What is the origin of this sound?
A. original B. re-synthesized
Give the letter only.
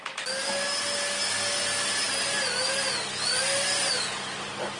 A